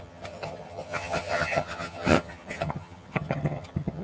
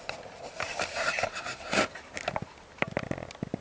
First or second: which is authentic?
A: second